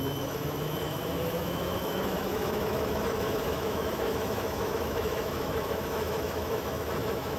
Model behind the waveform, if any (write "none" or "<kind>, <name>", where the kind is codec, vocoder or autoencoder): autoencoder, DAC-VAE